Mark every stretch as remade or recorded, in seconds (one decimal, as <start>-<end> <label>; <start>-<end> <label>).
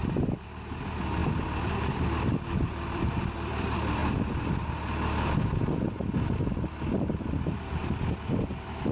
0.0-1.2 remade; 1.2-1.8 recorded; 1.8-4.0 remade; 4.0-7.3 recorded; 7.3-8.9 remade